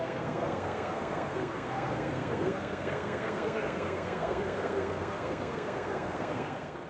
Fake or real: fake